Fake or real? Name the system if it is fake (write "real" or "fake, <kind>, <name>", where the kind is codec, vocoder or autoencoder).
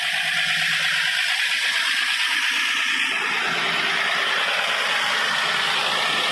real